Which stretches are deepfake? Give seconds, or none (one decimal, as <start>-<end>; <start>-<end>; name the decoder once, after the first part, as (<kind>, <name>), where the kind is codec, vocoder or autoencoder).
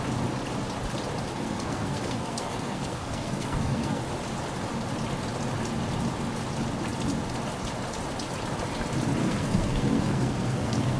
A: 1.3-4.0 (codec, SNAC); 9.2-11.0